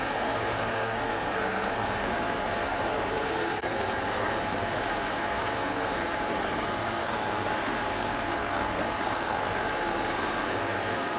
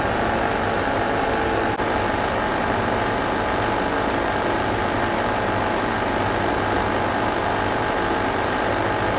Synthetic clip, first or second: first